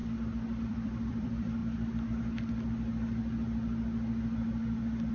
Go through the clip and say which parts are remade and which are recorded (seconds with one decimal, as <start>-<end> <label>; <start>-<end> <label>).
0.0-0.6 recorded; 0.6-1.6 remade; 1.6-5.1 recorded